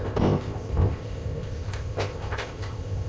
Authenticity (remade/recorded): remade